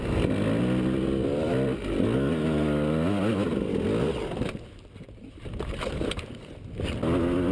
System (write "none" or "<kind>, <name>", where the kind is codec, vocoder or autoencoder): none